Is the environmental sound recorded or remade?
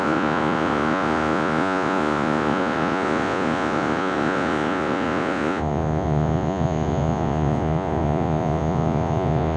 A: remade